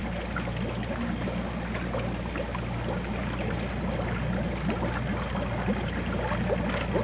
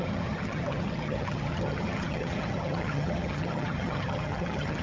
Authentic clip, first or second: first